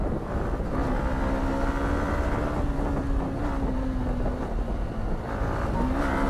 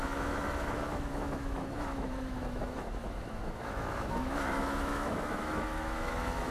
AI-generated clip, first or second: second